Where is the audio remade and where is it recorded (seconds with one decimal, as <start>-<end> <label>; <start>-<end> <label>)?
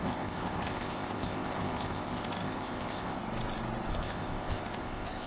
0.0-3.2 remade; 3.2-3.9 recorded; 3.9-5.3 remade